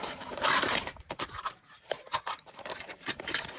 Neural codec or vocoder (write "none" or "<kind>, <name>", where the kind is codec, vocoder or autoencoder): vocoder, BigVGAN v2